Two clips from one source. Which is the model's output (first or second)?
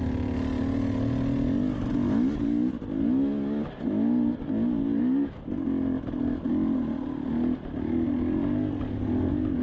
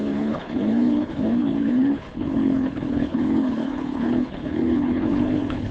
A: second